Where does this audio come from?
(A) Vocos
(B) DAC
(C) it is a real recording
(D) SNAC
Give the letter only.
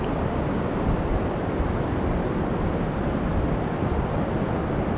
C